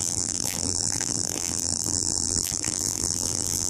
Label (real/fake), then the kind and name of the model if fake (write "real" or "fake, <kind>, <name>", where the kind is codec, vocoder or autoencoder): fake, vocoder, BigVGAN v2